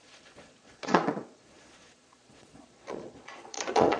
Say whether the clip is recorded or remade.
remade